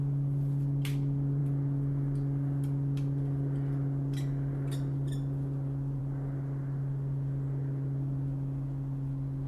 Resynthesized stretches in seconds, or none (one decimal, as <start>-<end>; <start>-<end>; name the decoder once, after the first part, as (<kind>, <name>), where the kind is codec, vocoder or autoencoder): none